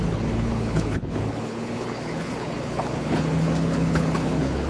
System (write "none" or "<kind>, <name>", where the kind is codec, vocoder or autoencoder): codec, HILCodec